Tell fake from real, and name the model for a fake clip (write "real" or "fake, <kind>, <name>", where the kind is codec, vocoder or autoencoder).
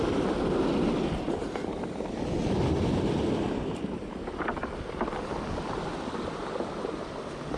real